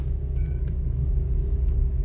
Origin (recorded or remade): remade